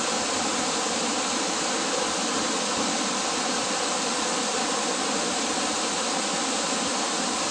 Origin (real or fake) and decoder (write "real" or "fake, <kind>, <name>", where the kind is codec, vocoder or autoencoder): real